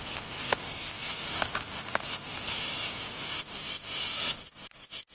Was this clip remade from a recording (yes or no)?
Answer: no